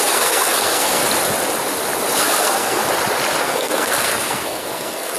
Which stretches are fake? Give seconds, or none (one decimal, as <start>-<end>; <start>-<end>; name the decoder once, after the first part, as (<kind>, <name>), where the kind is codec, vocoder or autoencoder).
0.0-1.0 (codec, SNAC); 2.2-2.8; 3.4-5.2